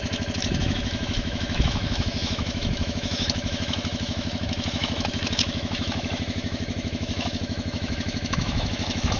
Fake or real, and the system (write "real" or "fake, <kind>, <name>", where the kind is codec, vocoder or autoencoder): fake, autoencoder, DAC-VAE